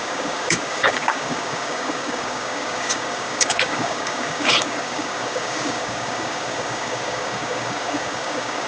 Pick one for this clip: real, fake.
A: fake